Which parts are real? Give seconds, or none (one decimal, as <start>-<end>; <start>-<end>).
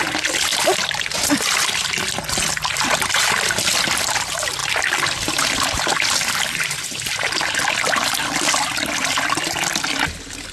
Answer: 0.0-0.5; 3.8-4.6; 9.8-10.5